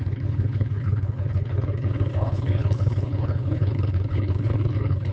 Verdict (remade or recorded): remade